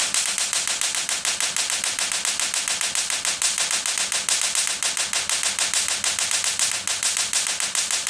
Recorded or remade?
recorded